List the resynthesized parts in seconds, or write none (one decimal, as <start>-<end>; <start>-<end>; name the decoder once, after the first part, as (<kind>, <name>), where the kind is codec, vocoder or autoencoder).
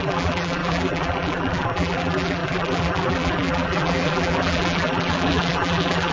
0.0-6.1 (vocoder, BigVGAN v2)